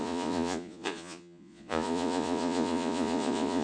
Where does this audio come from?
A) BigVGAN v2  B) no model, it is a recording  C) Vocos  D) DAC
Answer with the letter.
C